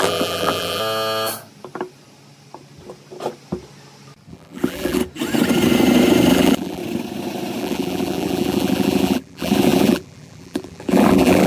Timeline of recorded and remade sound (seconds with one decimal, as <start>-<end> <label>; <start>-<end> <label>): 0.0-0.8 remade; 0.8-4.3 recorded; 4.3-5.0 remade; 5.0-6.3 recorded; 6.3-6.8 remade; 6.8-7.6 recorded; 7.6-11.5 remade